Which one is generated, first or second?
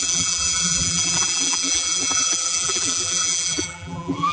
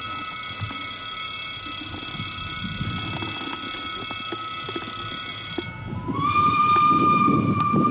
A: first